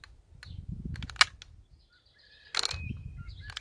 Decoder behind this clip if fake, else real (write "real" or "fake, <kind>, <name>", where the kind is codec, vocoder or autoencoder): real